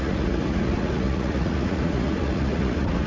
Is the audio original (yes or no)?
no